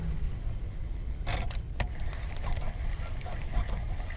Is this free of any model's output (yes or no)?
yes